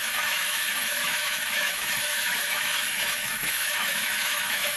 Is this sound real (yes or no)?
no